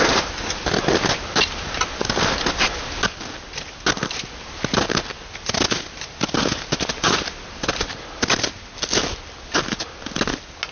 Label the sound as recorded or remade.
recorded